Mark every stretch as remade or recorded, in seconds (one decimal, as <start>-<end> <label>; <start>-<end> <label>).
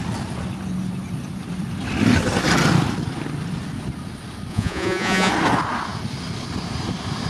0.0-4.5 recorded; 4.5-5.3 remade; 5.3-7.3 recorded